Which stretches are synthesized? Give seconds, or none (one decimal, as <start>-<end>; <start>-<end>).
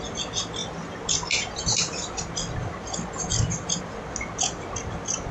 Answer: none